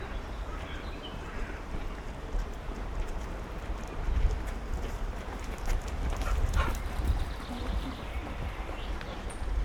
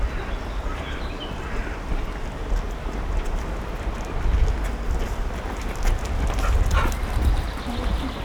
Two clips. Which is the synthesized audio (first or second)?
first